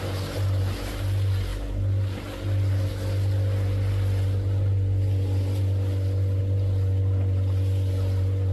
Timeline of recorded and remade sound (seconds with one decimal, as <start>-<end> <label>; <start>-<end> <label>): 0.0-8.5 recorded